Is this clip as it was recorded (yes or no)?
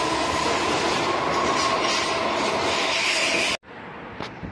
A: yes